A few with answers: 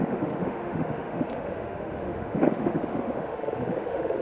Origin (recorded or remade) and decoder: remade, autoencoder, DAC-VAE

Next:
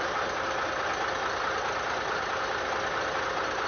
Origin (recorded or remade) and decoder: recorded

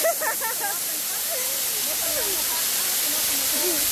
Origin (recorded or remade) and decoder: recorded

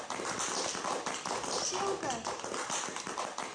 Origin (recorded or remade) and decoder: recorded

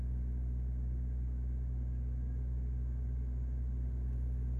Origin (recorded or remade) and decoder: recorded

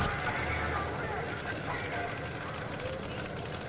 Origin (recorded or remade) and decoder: recorded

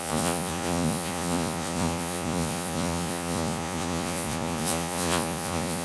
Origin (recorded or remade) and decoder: remade, vocoder, Vocos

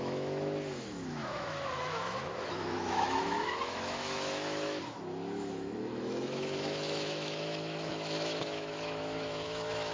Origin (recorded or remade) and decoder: remade, autoencoder, DAC-VAE